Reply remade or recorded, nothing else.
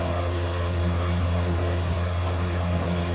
remade